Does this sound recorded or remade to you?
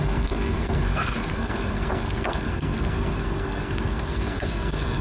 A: remade